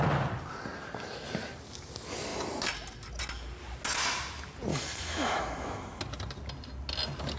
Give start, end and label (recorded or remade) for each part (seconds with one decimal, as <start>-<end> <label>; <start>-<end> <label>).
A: 0.0-4.7 recorded; 4.7-6.0 remade; 6.0-7.4 recorded